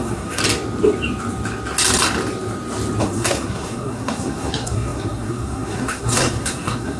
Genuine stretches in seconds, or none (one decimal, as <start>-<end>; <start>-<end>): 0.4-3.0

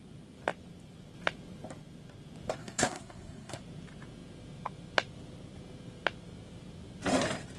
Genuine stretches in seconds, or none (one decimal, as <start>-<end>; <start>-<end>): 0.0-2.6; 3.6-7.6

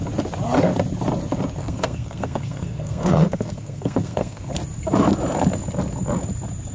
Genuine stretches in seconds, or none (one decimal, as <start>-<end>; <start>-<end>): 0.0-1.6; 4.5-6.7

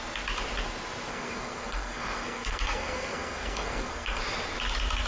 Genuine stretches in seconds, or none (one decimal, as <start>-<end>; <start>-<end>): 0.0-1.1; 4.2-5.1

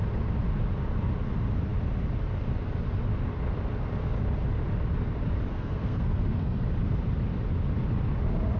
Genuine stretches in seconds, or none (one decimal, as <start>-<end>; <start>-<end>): 0.0-5.5; 6.6-8.6

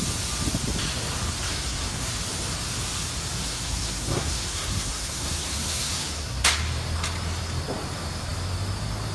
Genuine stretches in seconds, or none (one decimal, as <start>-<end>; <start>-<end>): 0.0-1.5; 2.1-3.4; 6.6-9.1